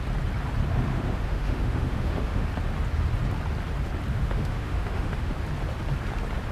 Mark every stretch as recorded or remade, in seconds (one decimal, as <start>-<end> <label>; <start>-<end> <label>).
0.0-0.9 recorded; 0.9-2.5 remade; 2.5-4.1 recorded; 4.1-5.3 remade; 5.3-6.5 recorded